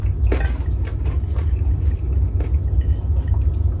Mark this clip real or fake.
real